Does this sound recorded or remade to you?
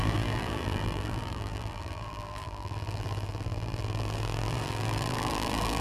remade